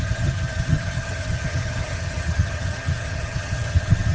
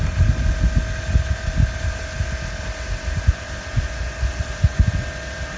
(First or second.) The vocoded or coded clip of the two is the first